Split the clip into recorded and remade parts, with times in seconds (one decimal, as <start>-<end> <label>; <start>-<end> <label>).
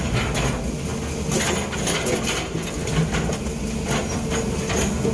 0.0-5.1 recorded